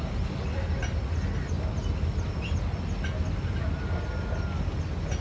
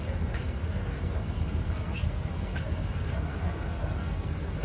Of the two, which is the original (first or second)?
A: first